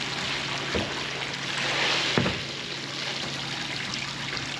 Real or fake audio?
real